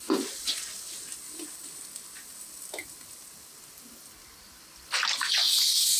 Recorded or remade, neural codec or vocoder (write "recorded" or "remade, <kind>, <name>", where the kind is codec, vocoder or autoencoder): recorded